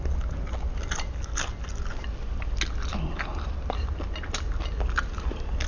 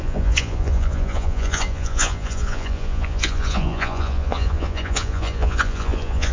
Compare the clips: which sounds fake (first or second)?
second